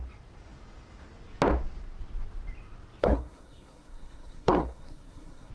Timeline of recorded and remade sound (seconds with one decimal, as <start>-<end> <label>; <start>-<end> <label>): 0.0-3.0 recorded; 3.0-5.5 remade